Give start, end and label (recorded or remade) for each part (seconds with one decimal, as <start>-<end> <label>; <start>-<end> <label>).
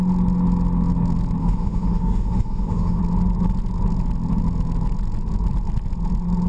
0.0-1.4 recorded; 1.4-3.0 remade; 3.0-6.5 recorded